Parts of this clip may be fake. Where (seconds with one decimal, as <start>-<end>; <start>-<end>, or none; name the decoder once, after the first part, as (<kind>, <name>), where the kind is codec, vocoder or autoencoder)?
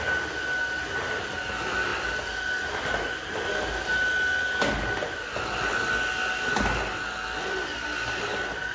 none